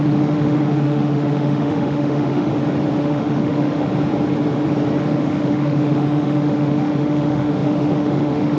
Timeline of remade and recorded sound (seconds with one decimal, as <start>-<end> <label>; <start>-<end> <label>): 0.0-2.5 remade; 2.5-3.0 recorded; 3.0-3.9 remade; 3.9-5.0 recorded; 5.0-8.6 remade